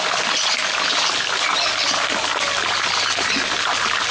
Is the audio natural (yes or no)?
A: yes